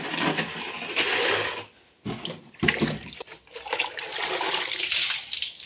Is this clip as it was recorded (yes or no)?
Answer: yes